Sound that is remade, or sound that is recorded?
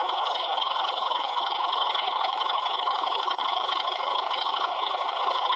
remade